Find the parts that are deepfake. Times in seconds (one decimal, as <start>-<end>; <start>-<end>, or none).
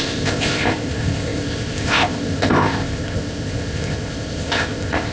0.0-5.1